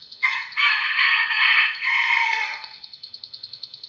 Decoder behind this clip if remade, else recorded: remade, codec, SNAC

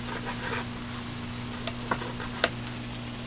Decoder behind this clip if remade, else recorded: recorded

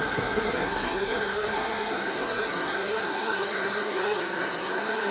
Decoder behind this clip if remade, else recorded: remade, codec, SNAC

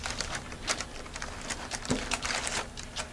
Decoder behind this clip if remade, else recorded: recorded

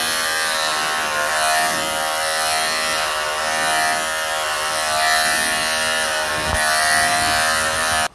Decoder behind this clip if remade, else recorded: recorded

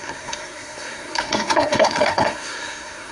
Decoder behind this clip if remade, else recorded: remade, codec, SNAC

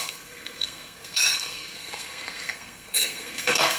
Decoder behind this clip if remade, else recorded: remade, codec, SNAC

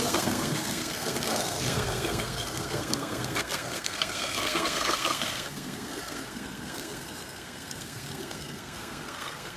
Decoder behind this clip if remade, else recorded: remade, codec, SNAC